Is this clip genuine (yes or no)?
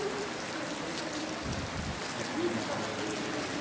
yes